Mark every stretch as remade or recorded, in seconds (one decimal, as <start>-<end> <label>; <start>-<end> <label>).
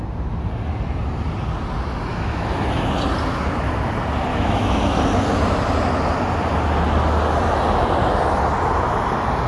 0.0-2.1 recorded; 2.1-2.9 remade; 2.9-4.3 recorded; 4.3-5.0 remade; 5.0-9.5 recorded